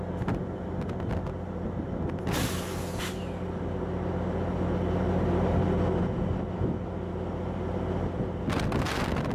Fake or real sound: real